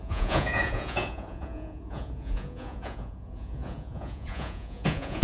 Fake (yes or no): yes